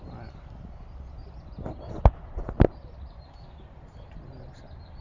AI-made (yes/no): no